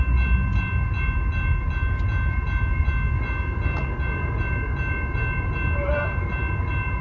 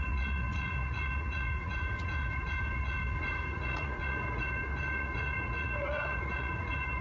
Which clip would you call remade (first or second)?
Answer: second